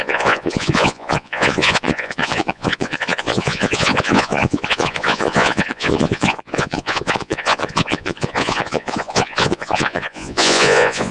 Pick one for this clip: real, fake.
fake